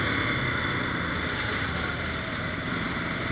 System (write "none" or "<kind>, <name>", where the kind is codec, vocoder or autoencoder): none